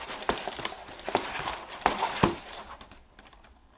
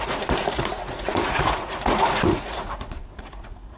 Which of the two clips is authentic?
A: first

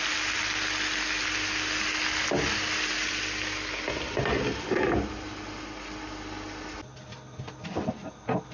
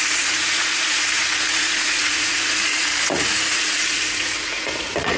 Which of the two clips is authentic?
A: first